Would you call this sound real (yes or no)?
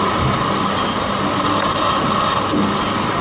yes